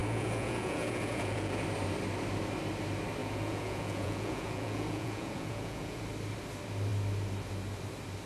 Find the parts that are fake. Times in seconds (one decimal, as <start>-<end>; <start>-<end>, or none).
0.0-1.6; 3.2-6.0